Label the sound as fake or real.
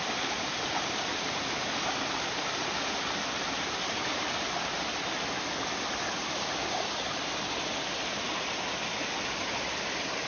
real